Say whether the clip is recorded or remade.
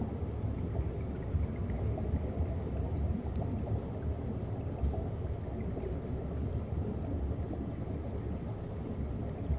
recorded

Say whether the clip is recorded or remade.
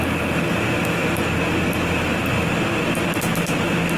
recorded